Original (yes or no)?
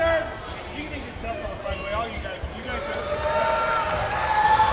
yes